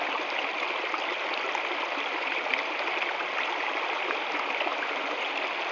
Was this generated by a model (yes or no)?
no